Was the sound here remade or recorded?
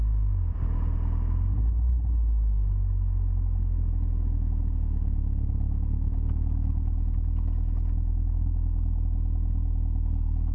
recorded